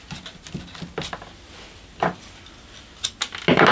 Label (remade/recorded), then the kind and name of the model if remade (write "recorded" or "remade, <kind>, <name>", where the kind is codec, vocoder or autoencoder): recorded